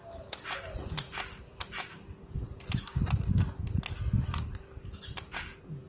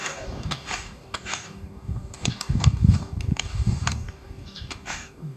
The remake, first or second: second